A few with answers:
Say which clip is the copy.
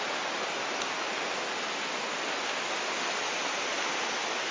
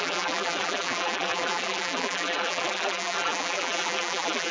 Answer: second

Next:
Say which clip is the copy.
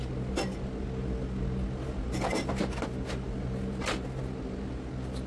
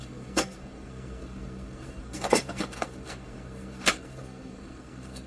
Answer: second